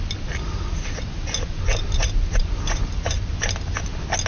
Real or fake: real